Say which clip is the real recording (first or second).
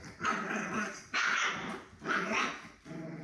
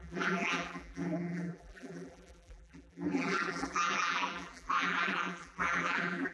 first